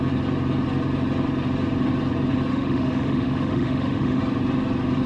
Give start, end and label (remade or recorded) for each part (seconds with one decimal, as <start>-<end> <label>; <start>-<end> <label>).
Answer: 0.0-2.5 recorded; 2.5-4.2 remade; 4.2-5.1 recorded